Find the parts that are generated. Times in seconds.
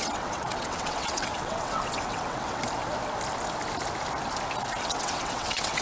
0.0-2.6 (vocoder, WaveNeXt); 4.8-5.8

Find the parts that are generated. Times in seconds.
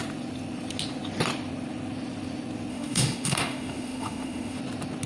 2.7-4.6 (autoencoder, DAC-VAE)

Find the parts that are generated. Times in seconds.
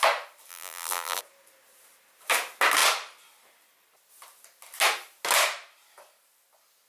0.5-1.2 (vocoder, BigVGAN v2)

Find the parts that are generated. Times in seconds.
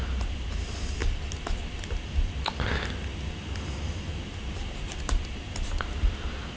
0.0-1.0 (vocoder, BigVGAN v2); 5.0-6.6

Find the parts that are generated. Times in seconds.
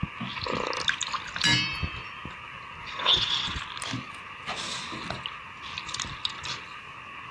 2.8-3.6 (vocoder, WaveNeXt)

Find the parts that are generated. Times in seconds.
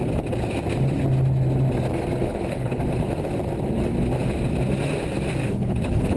2.2-2.8 (codec, HILCodec); 5.4-6.2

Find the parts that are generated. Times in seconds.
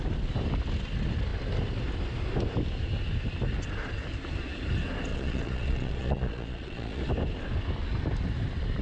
5.1-7.0 (vocoder, Vocos)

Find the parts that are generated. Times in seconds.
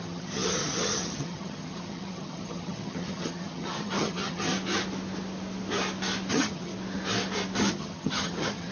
0.0-4.5 (vocoder, HiFi-GAN); 6.3-6.7; 7.7-8.7